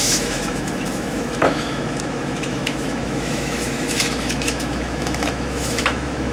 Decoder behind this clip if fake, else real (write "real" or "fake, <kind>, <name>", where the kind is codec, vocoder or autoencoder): fake, autoencoder, DAC-VAE